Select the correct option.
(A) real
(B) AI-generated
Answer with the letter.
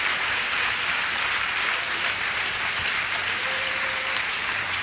B